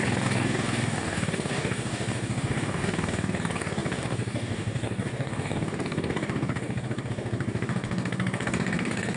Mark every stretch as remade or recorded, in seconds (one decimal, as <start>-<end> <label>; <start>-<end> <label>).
0.0-9.2 remade